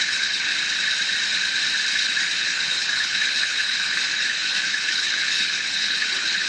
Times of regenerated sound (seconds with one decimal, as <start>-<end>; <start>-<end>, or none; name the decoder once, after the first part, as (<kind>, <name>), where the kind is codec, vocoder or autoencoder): 0.0-0.5 (codec, HILCodec); 2.4-6.5